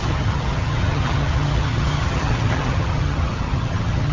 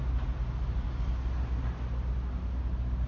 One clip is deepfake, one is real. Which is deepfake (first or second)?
first